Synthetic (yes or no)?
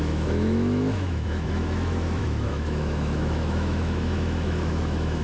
yes